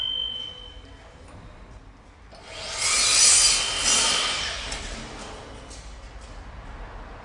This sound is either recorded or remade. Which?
recorded